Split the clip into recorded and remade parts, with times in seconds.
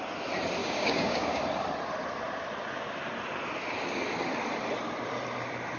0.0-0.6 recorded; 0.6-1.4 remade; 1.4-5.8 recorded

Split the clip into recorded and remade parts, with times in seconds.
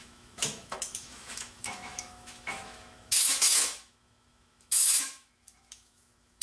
0.0-6.4 remade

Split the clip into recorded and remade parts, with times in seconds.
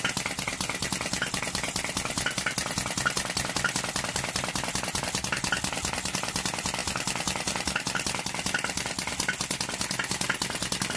0.0-11.0 recorded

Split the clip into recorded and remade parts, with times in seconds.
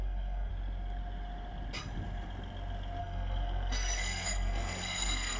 0.0-0.5 remade; 0.5-3.0 recorded; 3.0-5.4 remade